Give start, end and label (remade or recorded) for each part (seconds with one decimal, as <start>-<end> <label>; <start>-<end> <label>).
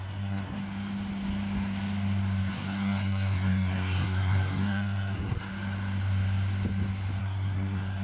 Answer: 0.0-0.6 remade; 0.6-2.5 recorded; 2.5-5.5 remade; 5.5-7.2 recorded; 7.2-8.0 remade